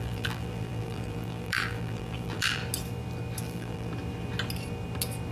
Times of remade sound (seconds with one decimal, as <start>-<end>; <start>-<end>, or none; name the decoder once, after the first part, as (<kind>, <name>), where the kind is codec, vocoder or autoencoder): 0.0-2.6 (vocoder, BigVGAN v2); 3.4-3.9